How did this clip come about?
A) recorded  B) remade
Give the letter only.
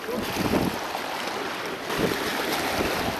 A